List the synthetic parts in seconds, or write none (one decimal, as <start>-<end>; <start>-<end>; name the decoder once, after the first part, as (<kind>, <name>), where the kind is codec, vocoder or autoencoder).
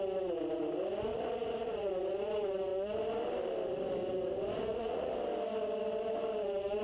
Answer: 1.1-1.9 (vocoder, Vocos); 4.5-5.1